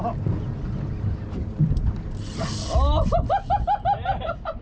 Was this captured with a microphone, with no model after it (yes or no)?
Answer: yes